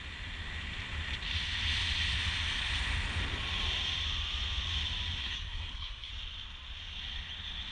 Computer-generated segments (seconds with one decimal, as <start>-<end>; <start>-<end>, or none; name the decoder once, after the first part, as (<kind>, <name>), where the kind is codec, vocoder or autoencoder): 5.2-6.1 (codec, SNAC)